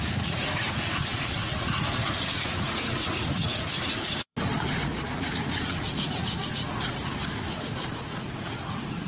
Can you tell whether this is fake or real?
fake